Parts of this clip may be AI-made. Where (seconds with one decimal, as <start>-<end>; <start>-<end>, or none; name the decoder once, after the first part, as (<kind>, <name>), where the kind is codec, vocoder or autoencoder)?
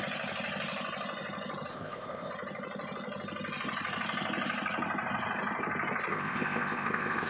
1.7-2.3 (codec, ZipCodec); 6.1-7.3